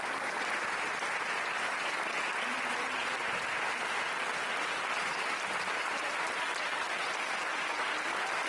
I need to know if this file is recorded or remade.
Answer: recorded